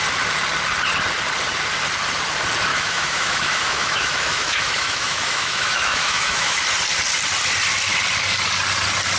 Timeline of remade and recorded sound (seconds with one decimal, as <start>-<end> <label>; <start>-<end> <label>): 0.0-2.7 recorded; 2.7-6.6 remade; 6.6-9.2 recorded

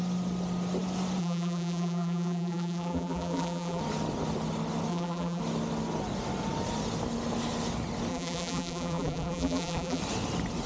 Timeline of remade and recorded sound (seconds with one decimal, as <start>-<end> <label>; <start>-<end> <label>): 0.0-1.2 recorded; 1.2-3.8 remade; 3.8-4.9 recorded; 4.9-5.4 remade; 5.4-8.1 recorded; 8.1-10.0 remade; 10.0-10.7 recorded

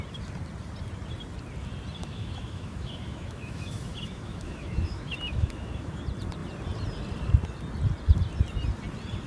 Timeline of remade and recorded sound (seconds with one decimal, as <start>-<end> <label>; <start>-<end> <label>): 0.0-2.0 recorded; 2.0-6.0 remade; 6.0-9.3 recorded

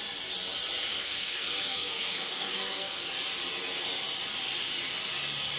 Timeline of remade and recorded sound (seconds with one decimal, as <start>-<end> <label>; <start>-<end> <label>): 0.0-0.9 recorded; 0.9-3.1 remade; 3.1-5.6 recorded